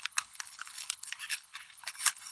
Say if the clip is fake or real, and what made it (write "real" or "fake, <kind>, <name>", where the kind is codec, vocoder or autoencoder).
fake, codec, HILCodec